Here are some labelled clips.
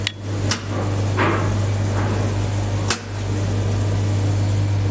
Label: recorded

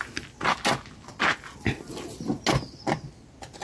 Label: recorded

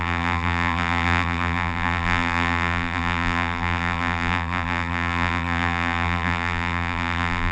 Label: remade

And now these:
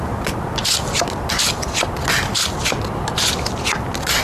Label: recorded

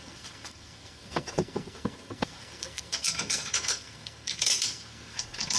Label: remade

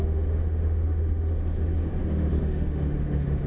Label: remade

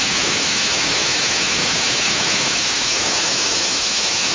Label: remade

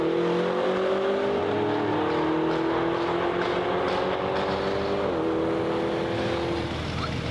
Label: recorded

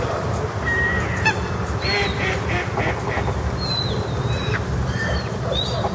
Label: recorded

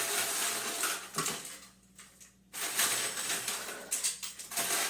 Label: recorded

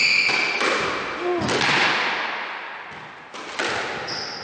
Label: recorded